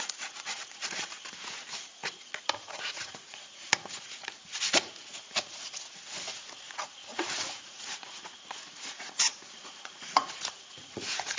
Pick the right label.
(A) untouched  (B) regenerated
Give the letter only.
B